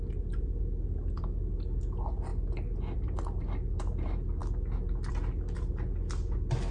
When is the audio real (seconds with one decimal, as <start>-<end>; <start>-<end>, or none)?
0.0-6.7